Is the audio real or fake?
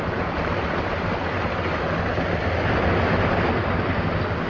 real